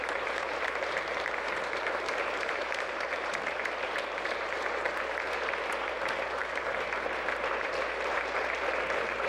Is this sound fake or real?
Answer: fake